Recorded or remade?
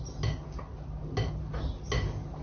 recorded